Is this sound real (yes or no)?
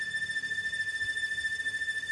yes